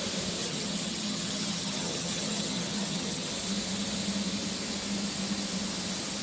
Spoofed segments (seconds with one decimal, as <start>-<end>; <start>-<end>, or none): 0.4-3.3